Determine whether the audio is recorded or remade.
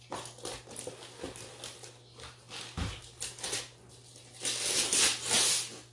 recorded